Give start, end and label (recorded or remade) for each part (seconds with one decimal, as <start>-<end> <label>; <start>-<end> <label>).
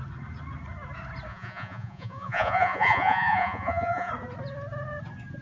0.0-1.3 recorded; 1.3-4.1 remade; 4.1-5.4 recorded